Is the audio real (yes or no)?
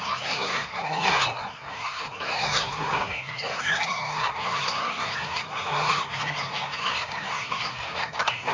no